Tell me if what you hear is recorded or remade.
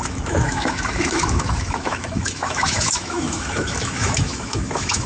remade